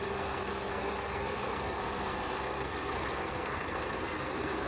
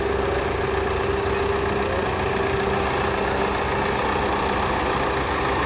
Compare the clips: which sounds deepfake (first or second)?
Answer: first